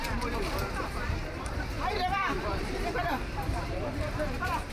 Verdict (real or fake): fake